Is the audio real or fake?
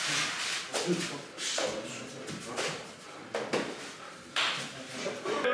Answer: real